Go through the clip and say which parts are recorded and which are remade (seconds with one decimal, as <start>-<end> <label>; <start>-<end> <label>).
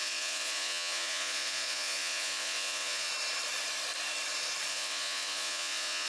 0.0-3.1 remade; 3.1-4.7 recorded; 4.7-6.1 remade